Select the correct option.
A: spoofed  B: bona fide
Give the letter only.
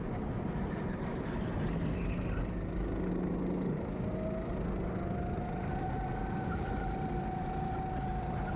B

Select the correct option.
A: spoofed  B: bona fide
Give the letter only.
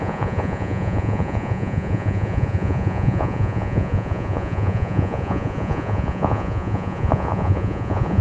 A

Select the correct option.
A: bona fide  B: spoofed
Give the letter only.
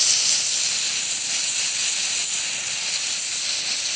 A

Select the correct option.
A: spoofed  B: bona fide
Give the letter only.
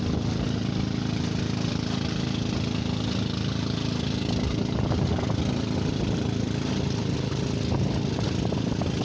B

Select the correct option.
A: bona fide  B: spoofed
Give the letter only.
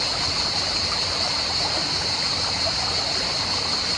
A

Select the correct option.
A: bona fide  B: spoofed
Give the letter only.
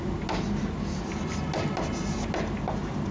A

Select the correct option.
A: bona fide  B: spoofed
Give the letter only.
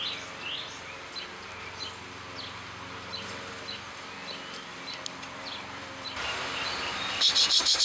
A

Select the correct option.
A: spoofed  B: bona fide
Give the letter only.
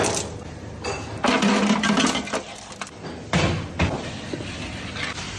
B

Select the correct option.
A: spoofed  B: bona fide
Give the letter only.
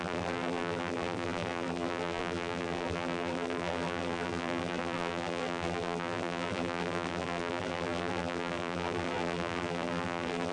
A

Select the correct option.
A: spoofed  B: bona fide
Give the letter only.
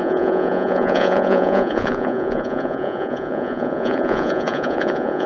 A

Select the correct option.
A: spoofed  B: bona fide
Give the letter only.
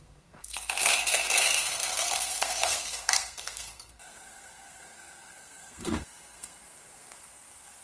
A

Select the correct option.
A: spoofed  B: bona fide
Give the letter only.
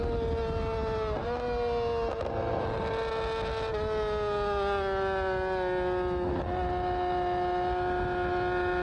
B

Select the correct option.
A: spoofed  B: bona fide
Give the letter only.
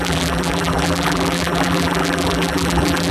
A